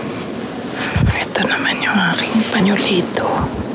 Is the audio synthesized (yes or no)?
no